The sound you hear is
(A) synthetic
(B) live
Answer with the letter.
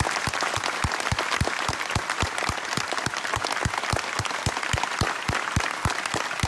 B